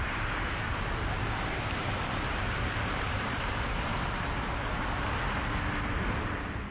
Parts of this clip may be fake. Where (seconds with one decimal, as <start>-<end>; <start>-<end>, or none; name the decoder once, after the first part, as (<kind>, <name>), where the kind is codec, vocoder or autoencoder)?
0.0-3.9 (vocoder, BigVGAN v2)